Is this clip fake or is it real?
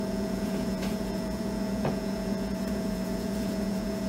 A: fake